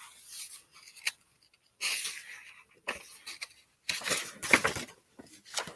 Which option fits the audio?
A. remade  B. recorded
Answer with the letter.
B